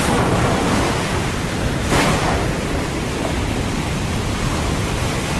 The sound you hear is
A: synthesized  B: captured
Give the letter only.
B